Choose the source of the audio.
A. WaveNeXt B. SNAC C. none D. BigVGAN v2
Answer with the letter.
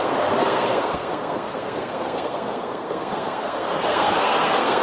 B